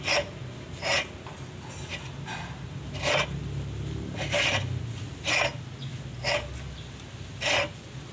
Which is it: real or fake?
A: real